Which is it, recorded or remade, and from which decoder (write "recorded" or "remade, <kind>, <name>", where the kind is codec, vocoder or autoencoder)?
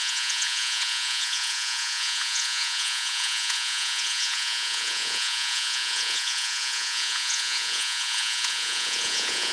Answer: remade, vocoder, Vocos